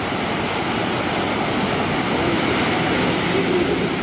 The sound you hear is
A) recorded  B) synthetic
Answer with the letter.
A